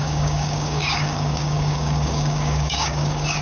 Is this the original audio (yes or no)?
no